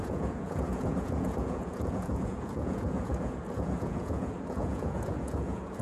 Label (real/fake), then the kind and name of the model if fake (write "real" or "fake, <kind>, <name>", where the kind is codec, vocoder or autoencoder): fake, vocoder, Vocos